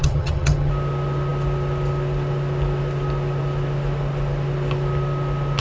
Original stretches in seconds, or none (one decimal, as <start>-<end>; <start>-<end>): 0.7-5.6